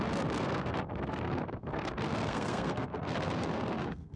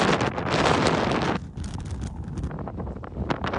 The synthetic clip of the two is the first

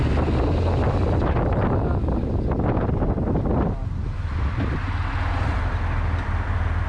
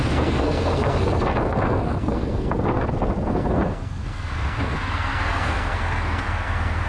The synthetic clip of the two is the second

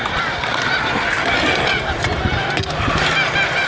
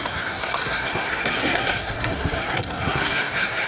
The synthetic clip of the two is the second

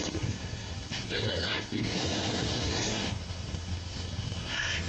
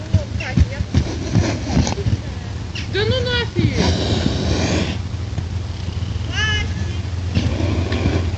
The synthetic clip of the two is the first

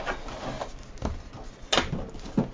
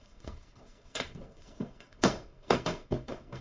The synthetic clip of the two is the second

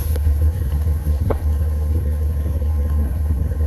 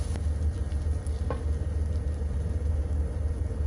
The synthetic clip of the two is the first